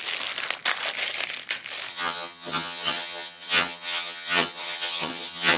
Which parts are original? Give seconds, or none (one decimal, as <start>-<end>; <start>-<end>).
0.0-1.9